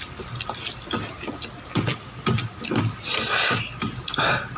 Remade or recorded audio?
recorded